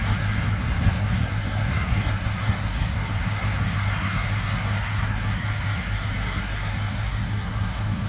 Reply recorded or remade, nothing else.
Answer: remade